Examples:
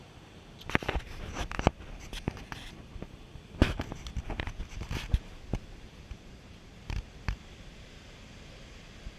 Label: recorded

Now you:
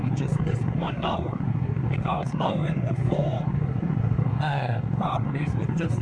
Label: remade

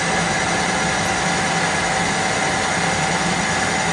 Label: recorded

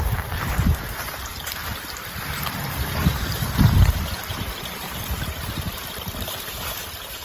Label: remade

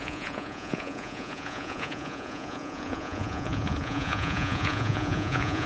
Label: remade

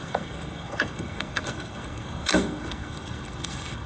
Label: remade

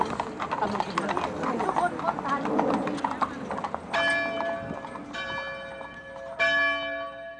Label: recorded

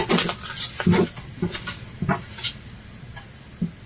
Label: recorded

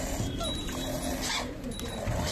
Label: recorded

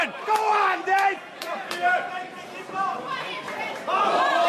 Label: remade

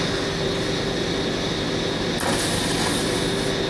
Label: recorded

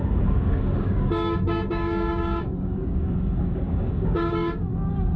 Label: remade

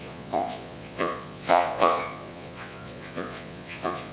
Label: remade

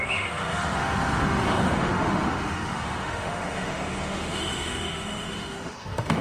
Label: remade